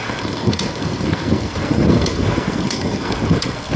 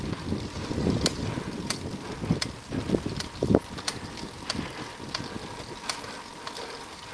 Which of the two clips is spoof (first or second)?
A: first